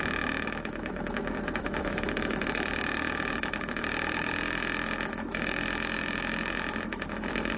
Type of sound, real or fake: fake